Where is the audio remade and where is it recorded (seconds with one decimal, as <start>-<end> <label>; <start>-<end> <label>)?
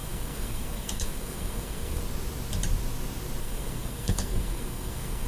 0.0-2.0 remade; 2.0-3.4 recorded; 3.4-5.3 remade